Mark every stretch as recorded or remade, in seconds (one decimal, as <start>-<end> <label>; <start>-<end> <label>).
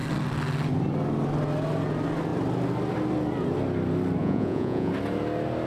0.0-4.2 recorded; 4.2-4.9 remade; 4.9-5.7 recorded